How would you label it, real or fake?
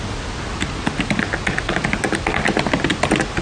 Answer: real